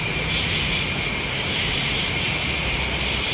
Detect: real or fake fake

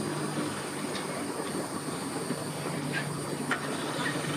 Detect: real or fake real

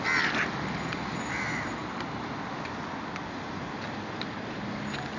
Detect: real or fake real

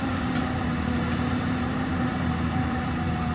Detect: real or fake fake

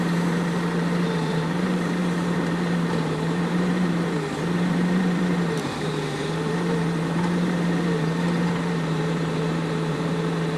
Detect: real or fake fake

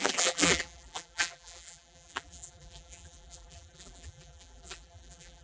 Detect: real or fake fake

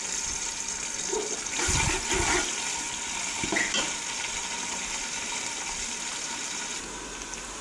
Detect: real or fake real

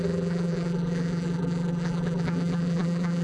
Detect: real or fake fake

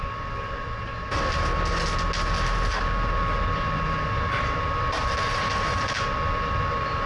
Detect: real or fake real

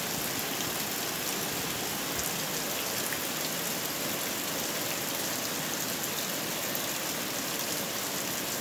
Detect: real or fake real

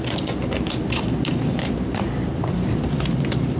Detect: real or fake fake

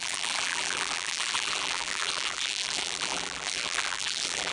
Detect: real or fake fake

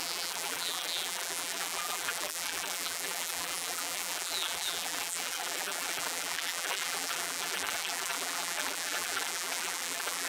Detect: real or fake fake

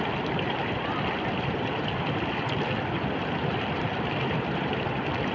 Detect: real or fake fake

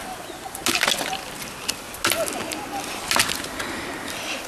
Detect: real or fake real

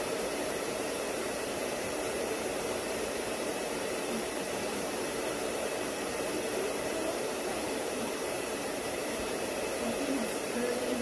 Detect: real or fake fake